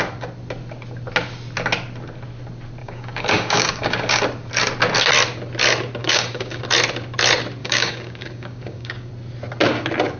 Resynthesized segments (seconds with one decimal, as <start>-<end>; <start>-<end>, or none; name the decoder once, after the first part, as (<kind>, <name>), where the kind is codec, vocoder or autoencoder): 2.8-4.2 (codec, DAC); 6.0-6.6; 7.6-9.1